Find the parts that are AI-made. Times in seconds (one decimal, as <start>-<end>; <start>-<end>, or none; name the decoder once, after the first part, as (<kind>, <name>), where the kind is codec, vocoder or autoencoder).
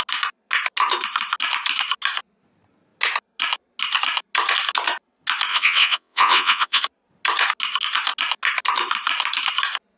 5.5-6.8 (vocoder, WaveNeXt)